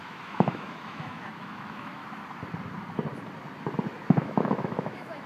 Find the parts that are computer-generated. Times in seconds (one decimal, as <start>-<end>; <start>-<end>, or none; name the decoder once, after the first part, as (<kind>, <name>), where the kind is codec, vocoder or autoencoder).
0.0-2.0 (autoencoder, DAC-VAE); 4.2-5.3